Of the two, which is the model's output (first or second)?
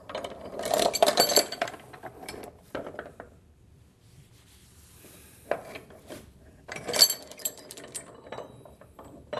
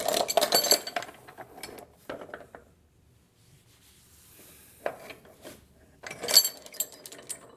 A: first